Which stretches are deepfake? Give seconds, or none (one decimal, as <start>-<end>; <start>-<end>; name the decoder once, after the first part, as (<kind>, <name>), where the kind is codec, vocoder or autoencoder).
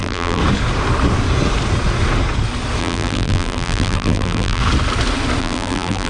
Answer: 0.0-0.4 (vocoder, BigVGAN v2); 2.8-4.6; 5.4-6.1